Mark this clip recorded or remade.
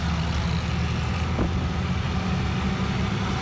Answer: recorded